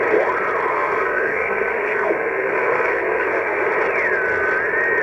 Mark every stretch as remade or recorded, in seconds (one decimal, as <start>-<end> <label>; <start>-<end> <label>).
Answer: 0.0-0.7 recorded; 0.7-3.7 remade; 3.7-5.0 recorded